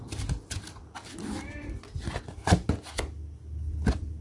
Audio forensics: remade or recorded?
recorded